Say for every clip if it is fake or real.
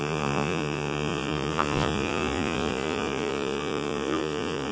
fake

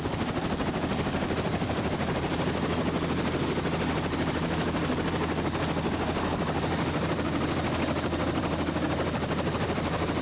real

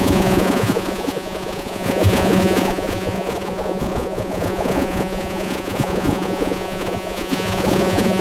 fake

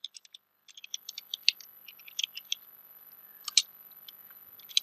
real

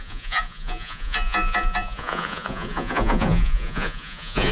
fake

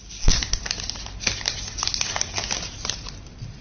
real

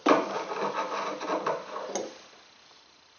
real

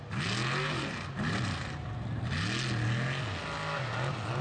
real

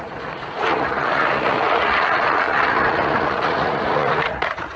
fake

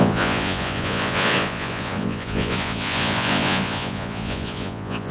fake